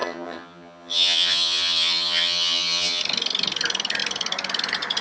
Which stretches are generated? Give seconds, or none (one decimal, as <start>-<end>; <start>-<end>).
0.0-3.0